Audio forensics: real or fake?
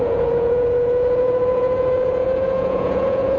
fake